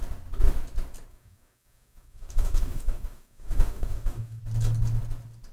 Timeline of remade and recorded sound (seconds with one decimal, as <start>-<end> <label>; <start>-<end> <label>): 0.0-1.1 recorded; 1.1-4.4 remade; 4.4-5.5 recorded